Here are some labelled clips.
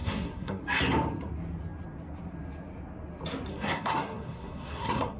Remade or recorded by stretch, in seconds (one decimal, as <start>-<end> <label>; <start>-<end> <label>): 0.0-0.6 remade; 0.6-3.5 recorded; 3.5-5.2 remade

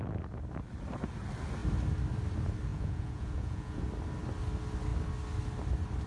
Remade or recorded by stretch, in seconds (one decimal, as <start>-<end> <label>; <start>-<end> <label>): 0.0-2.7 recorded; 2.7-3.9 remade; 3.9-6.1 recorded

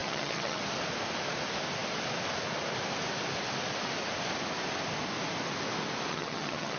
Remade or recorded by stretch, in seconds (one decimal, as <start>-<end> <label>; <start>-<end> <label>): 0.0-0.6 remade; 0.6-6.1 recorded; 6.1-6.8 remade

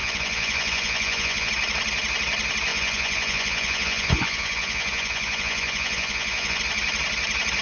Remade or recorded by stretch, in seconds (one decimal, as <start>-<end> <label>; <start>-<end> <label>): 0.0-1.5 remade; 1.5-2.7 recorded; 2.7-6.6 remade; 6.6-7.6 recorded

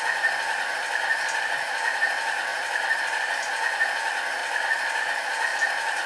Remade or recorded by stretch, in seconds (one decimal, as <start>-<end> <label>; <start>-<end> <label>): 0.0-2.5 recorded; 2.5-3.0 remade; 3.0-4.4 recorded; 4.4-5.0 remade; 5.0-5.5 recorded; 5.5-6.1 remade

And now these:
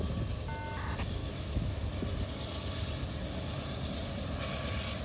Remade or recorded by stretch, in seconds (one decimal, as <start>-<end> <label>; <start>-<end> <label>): 0.0-1.2 recorded; 1.2-1.8 remade; 1.8-5.0 recorded

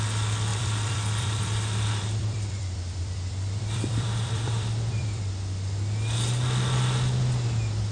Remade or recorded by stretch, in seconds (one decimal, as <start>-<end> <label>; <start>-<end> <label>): 0.0-0.5 recorded; 0.5-5.2 remade; 5.2-7.9 recorded

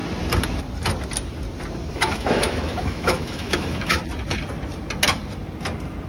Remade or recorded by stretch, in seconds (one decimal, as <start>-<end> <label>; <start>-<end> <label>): 0.0-1.9 recorded; 1.9-4.0 remade; 4.0-6.1 recorded